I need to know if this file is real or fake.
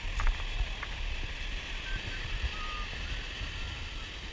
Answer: real